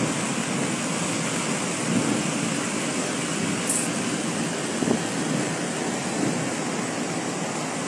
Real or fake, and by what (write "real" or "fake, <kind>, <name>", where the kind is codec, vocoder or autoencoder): real